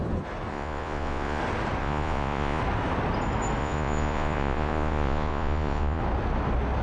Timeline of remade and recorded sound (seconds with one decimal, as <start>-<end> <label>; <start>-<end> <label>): 0.0-0.5 recorded; 0.5-1.4 remade; 1.4-1.8 recorded; 1.8-2.6 remade; 2.6-3.6 recorded; 3.6-6.0 remade; 6.0-6.8 recorded